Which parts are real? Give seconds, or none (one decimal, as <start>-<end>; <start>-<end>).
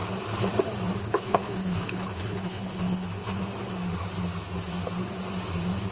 0.0-1.0; 3.4-5.9